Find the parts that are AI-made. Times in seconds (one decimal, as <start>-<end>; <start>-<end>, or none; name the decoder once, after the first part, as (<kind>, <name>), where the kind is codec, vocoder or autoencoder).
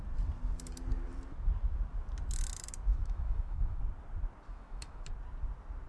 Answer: 2.9-3.8 (autoencoder, DAC-VAE); 4.5-5.0